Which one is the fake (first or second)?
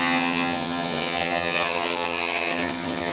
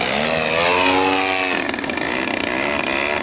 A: first